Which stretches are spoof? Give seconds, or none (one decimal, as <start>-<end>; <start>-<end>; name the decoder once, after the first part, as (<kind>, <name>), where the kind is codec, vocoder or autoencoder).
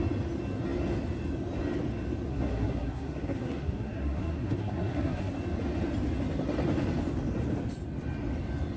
2.3-5.3 (codec, SNAC)